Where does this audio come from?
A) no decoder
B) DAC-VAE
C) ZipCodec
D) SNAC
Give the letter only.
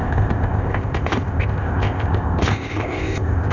C